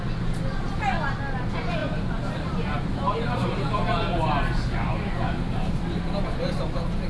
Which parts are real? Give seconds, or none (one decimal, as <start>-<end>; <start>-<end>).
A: 0.0-1.8; 5.7-7.1